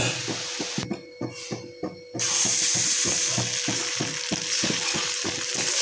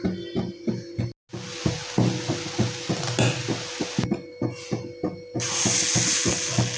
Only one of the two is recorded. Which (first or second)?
second